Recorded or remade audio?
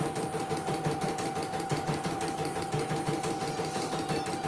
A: recorded